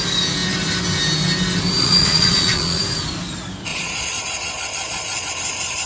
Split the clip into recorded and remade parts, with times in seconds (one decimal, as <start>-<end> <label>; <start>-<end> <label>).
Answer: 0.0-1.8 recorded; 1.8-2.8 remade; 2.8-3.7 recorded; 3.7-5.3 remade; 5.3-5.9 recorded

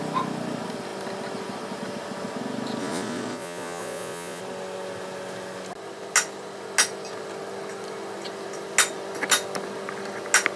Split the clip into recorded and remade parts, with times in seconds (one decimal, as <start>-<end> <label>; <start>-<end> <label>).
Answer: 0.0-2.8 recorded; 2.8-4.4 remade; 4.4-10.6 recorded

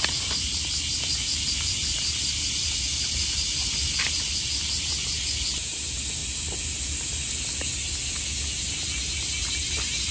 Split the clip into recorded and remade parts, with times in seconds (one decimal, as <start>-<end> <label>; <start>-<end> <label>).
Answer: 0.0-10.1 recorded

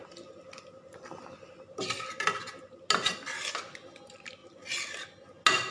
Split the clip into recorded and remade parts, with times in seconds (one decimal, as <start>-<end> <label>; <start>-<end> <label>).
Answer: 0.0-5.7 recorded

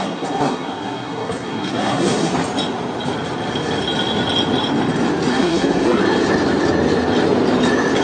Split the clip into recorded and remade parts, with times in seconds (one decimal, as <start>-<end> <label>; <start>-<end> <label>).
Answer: 0.0-2.3 remade; 2.3-5.3 recorded; 5.3-6.0 remade; 6.0-8.0 recorded